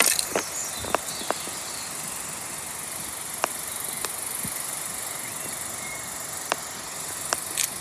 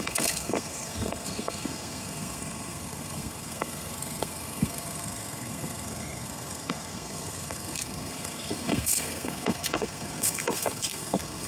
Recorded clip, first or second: first